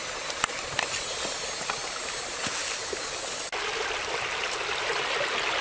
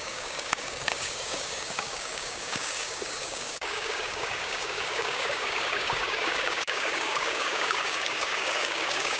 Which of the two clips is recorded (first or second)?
first